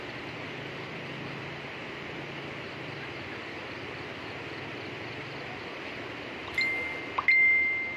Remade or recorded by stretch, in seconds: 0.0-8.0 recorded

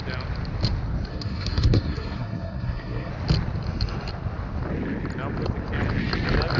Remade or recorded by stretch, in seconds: 0.0-1.1 recorded; 1.1-3.1 remade; 3.1-6.6 recorded

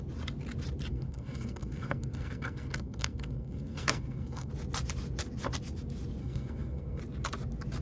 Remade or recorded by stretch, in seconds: 0.0-0.9 recorded; 0.9-4.5 remade; 4.5-6.2 recorded; 6.2-7.0 remade; 7.0-7.8 recorded

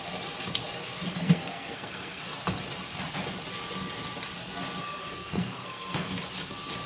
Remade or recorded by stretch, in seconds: 0.0-1.1 recorded; 1.1-2.2 remade; 2.2-4.8 recorded; 4.8-6.1 remade; 6.1-6.9 recorded

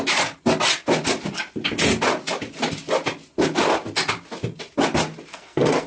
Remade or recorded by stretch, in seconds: 0.0-5.3 recorded; 5.3-5.9 remade